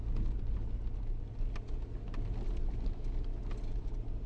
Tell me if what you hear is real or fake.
real